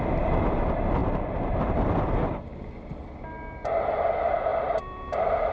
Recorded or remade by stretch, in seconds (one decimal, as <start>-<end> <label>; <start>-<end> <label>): 0.0-4.5 recorded; 4.5-5.5 remade